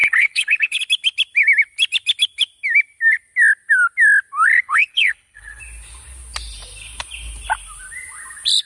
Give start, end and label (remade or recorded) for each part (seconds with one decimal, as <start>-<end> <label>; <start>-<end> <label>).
0.0-0.8 remade; 0.8-4.5 recorded; 4.5-5.6 remade; 5.6-8.7 recorded